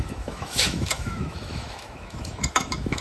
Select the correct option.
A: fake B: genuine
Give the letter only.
A